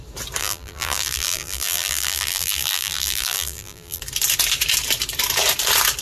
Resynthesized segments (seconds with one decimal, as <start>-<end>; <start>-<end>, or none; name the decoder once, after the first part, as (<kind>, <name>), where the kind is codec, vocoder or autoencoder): 0.4-4.0 (vocoder, BigVGAN v2)